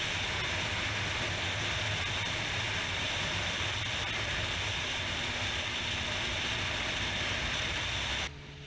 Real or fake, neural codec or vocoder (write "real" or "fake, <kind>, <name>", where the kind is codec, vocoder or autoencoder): real